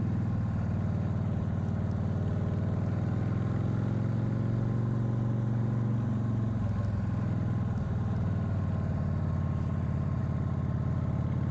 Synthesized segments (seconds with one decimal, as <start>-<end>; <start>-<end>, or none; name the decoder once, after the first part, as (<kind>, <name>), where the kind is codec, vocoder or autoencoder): none